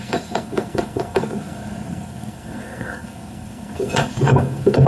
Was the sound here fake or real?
fake